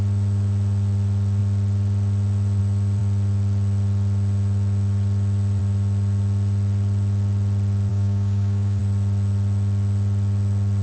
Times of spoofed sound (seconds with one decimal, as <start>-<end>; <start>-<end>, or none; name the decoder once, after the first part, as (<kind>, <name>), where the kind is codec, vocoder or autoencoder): 7.9-8.8 (codec, DAC)

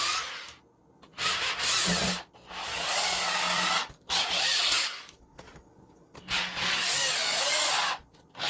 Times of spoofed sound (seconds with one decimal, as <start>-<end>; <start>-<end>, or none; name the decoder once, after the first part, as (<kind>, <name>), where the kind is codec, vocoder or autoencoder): 2.6-7.7 (codec, DAC)

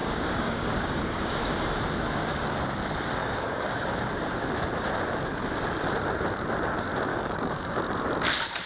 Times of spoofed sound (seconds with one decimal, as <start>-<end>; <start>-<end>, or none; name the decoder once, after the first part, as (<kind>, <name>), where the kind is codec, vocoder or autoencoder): 0.0-1.8 (codec, DAC); 3.2-4.1; 7.1-7.8

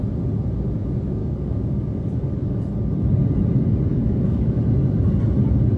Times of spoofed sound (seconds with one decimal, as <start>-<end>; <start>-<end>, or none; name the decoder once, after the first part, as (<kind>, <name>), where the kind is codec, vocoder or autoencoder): 1.2-2.6 (codec, DAC); 3.9-4.6

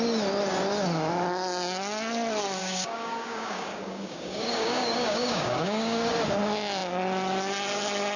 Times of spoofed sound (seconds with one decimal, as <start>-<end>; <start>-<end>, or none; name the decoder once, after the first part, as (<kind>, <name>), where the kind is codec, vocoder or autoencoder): 2.6-6.1 (codec, DAC)

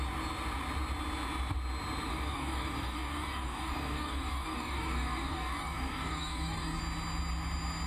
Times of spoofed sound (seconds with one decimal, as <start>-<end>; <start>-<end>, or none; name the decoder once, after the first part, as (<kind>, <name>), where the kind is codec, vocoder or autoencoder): 2.1-6.8 (codec, DAC)